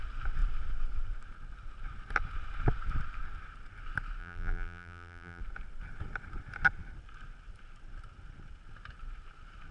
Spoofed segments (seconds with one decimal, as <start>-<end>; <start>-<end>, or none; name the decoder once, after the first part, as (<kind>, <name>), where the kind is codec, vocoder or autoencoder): 4.2-5.4 (vocoder, BigVGAN v2)